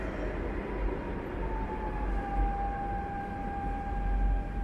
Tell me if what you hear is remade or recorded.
recorded